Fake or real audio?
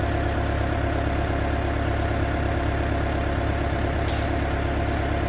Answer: real